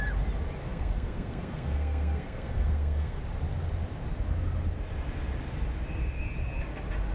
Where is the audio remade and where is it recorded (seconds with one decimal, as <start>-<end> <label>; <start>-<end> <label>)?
0.0-0.6 recorded; 0.6-3.2 remade; 3.2-7.1 recorded